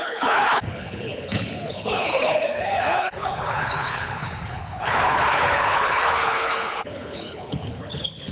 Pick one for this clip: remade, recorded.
remade